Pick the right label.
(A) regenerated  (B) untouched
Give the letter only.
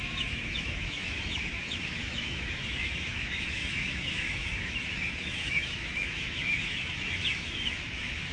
A